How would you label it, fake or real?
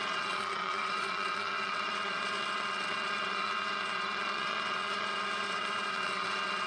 fake